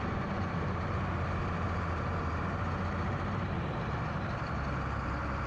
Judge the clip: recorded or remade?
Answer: remade